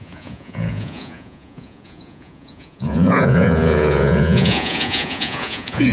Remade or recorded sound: remade